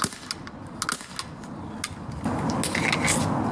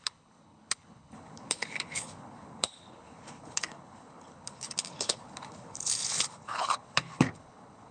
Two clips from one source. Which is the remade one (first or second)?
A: second